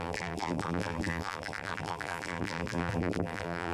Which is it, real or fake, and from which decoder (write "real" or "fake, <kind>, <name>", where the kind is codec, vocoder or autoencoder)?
fake, vocoder, BigVGAN v2